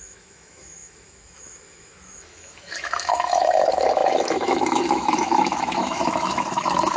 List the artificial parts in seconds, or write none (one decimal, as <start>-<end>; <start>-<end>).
0.0-7.0